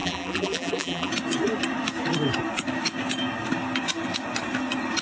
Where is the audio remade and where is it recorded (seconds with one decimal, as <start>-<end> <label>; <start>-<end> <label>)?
0.0-1.1 remade; 1.1-5.0 recorded